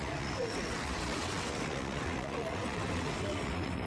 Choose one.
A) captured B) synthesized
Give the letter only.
B